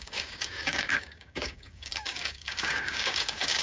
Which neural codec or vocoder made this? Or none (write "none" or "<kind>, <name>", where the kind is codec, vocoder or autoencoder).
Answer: codec, DAC